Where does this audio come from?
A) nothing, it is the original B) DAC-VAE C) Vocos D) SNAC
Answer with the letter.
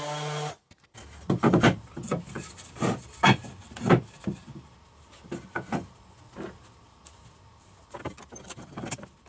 A